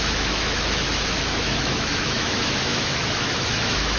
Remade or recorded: remade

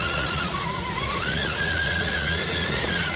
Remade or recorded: remade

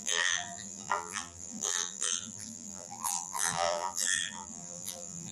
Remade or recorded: remade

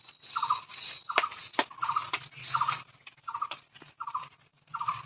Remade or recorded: recorded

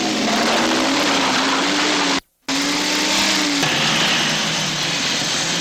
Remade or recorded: recorded